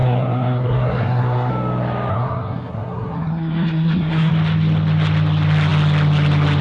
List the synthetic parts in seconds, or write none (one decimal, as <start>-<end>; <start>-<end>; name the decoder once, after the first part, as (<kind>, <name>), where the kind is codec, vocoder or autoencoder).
0.0-1.5 (codec, SNAC); 2.1-4.3